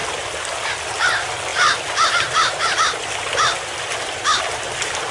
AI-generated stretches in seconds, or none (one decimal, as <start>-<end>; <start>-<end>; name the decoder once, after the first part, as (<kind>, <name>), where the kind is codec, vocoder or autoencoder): none